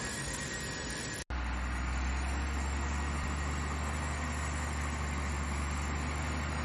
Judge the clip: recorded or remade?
recorded